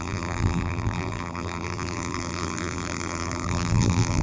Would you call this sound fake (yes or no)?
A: yes